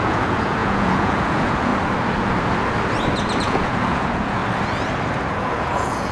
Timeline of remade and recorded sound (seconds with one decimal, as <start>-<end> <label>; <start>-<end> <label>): 0.0-1.7 remade; 1.7-3.4 recorded; 3.4-4.4 remade; 4.4-5.3 recorded; 5.3-6.1 remade